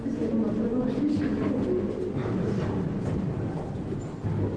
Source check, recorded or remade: recorded